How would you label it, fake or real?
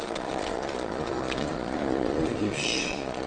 fake